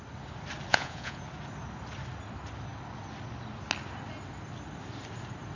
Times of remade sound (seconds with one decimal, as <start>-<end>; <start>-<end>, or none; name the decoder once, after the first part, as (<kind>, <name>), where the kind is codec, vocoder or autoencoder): 0.7-1.2 (vocoder, Vocos)